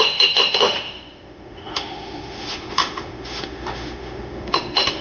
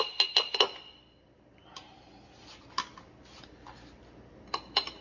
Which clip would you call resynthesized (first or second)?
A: first